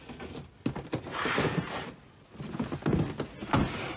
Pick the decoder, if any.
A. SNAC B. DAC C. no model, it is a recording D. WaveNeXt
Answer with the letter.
C